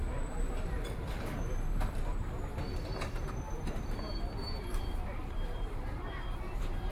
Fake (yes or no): yes